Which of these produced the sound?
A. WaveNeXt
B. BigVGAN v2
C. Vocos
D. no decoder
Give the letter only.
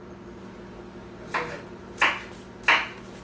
D